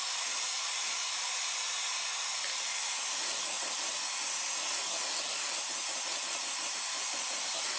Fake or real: real